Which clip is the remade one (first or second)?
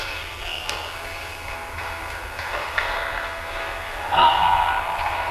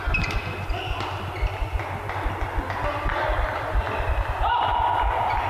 first